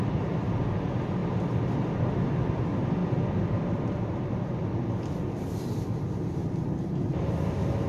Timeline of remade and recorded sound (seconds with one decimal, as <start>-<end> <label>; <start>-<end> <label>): 0.0-7.9 recorded